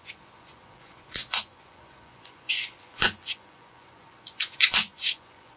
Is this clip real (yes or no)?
no